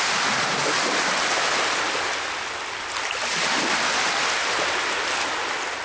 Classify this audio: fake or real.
real